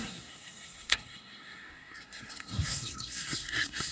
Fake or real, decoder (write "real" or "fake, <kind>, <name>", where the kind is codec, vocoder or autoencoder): fake, codec, SNAC